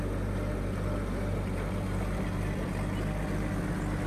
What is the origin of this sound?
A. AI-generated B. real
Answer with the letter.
B